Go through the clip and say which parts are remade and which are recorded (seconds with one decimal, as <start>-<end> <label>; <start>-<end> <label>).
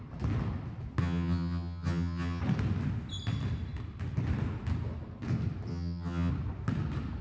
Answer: 0.0-1.0 recorded; 1.0-2.4 remade; 2.4-5.7 recorded; 5.7-6.3 remade; 6.3-7.2 recorded